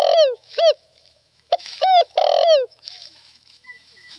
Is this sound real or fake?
fake